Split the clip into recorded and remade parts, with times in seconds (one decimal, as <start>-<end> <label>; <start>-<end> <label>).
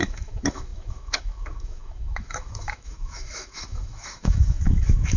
0.0-5.2 remade